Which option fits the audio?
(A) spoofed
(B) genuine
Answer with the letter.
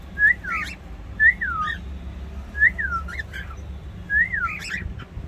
B